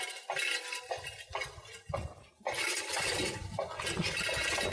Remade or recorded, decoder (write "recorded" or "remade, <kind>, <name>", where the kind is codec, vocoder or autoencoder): recorded